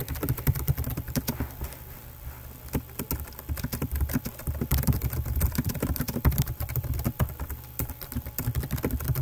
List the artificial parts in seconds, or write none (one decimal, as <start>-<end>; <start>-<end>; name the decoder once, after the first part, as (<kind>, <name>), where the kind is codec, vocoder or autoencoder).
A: 0.0-2.0 (vocoder, BigVGAN v2); 3.7-8.3